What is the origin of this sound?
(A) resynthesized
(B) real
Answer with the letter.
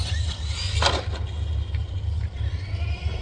B